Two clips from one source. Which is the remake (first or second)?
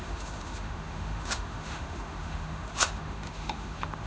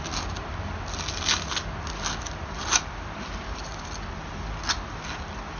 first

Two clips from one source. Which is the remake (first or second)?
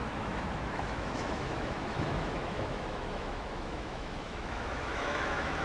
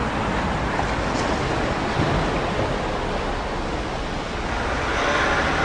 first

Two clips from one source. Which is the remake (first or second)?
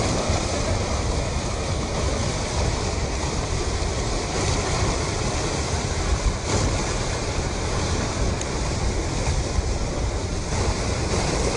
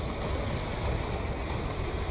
first